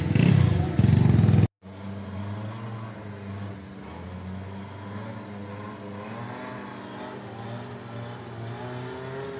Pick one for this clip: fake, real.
real